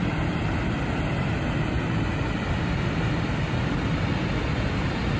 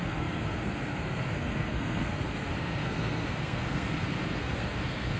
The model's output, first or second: second